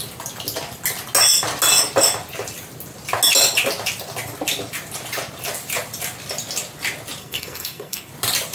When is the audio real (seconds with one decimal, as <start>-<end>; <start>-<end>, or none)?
0.0-7.2; 8.1-8.5